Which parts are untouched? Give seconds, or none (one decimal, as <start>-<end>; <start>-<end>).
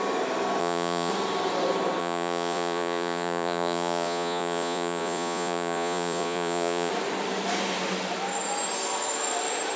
0.0-0.6; 1.1-2.0; 6.9-9.8